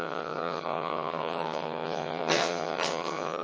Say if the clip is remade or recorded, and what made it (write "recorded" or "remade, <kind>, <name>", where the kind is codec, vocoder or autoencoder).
remade, vocoder, HiFi-GAN